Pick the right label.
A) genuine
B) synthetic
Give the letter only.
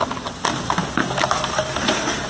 A